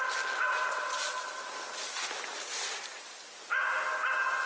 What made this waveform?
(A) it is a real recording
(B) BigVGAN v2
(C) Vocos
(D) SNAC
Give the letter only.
A